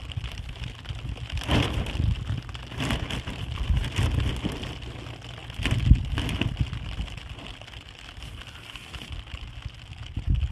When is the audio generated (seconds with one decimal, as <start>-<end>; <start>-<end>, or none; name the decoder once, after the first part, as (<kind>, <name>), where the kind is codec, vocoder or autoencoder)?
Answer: none